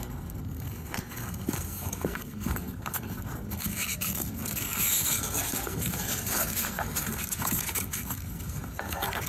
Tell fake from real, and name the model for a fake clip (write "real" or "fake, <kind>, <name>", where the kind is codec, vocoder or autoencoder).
fake, codec, SNAC